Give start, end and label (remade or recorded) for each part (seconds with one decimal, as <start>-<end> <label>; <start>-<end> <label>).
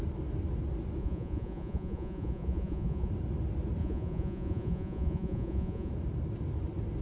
0.0-1.0 recorded; 1.0-3.1 remade; 3.1-3.8 recorded; 3.8-5.9 remade; 5.9-7.0 recorded